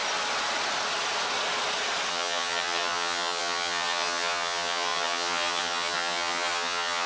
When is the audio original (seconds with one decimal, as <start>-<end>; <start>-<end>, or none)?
0.0-2.1